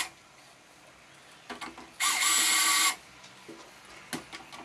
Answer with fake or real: real